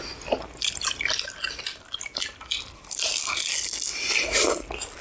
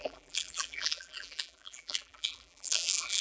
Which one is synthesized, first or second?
second